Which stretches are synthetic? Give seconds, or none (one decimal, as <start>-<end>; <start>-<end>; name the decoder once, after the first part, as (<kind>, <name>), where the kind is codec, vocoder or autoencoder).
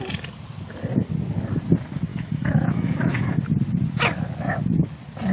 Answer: 2.1-3.4 (autoencoder, DAC-VAE)